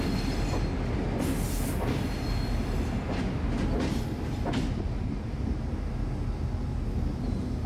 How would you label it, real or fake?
real